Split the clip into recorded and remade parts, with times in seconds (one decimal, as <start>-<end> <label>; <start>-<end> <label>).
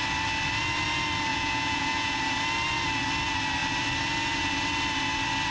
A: 0.0-1.3 recorded; 1.3-2.2 remade; 2.2-5.5 recorded